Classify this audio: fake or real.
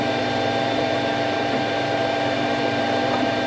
fake